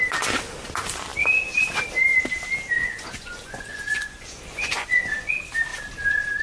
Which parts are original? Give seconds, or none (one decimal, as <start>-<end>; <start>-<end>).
0.0-2.8; 5.3-6.4